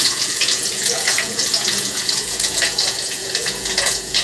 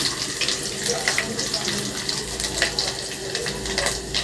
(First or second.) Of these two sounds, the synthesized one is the first